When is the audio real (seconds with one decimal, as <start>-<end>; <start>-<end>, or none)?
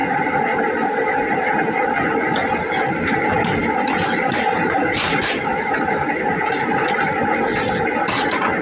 0.0-8.6